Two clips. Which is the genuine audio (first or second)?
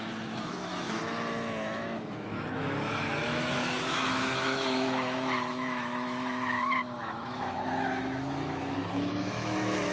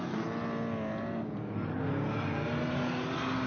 second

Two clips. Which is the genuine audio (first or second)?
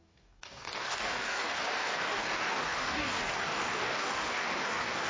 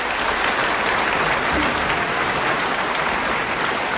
second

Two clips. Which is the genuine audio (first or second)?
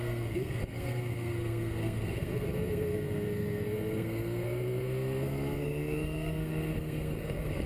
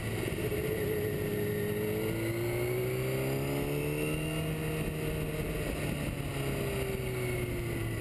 second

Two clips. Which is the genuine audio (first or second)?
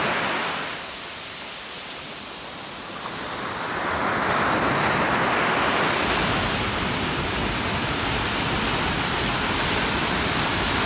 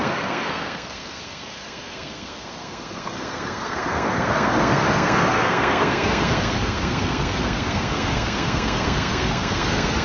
first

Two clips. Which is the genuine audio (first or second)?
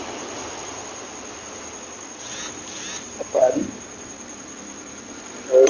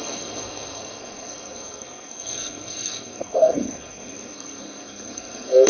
first